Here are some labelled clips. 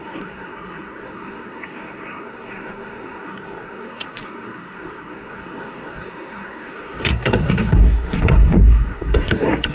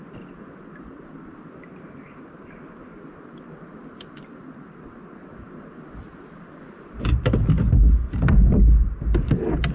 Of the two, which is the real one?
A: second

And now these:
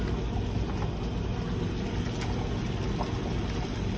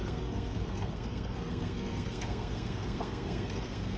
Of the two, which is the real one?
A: first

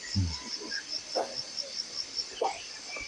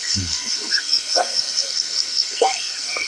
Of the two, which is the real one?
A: first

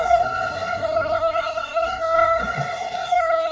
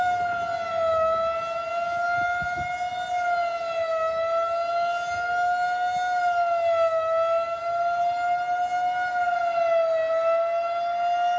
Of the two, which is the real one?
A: second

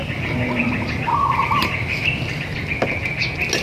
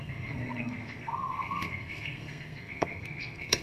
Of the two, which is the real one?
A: first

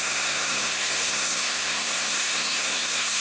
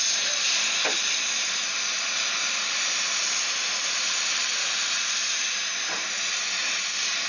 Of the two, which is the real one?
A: second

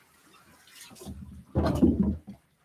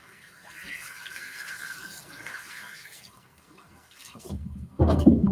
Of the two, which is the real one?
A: first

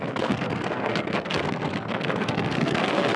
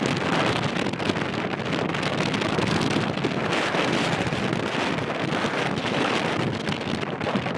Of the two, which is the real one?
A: second